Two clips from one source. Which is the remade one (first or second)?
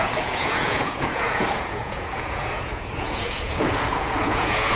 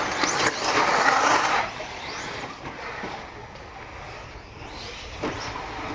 first